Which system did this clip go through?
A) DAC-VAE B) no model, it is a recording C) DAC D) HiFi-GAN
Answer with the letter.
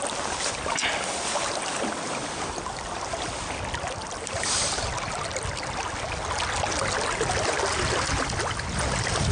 B